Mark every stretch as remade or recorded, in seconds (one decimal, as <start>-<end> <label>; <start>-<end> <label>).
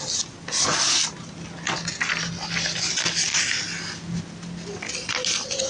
0.0-5.7 recorded